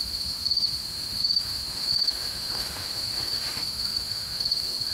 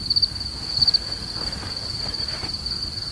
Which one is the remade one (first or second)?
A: first